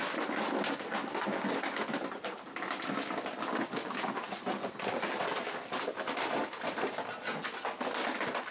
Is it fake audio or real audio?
real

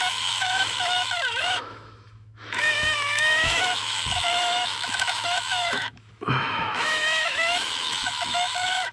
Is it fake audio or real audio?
fake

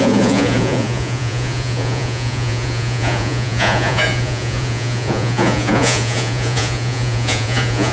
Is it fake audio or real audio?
fake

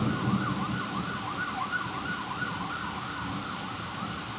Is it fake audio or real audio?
real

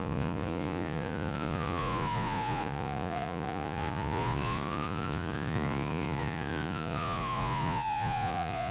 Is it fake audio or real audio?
fake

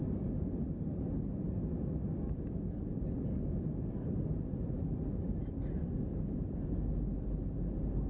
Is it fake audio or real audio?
real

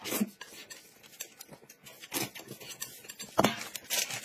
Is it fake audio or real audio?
real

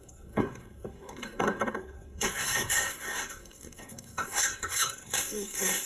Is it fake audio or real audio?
fake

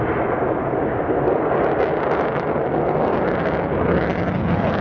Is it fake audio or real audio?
real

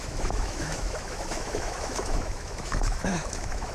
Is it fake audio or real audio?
fake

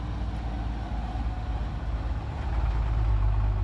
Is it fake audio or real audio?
real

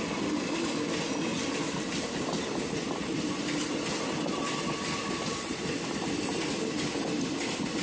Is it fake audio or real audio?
real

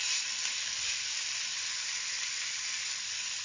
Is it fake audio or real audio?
fake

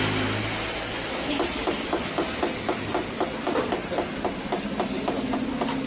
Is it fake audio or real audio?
real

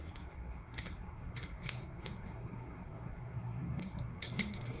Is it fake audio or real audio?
fake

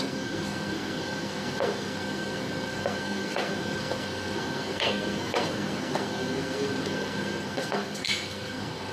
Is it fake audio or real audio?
fake